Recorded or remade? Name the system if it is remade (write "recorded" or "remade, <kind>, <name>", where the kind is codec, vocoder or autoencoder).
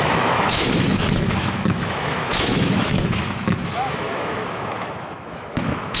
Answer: remade, autoencoder, DAC-VAE